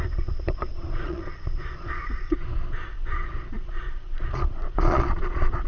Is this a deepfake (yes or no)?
yes